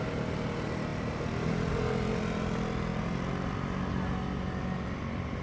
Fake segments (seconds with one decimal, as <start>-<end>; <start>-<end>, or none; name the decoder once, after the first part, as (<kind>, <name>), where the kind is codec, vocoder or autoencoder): none